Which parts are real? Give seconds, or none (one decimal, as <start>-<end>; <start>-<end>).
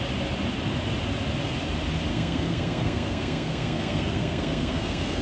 0.0-2.1